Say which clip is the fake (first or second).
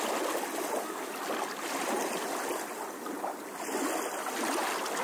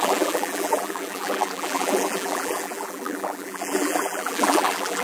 second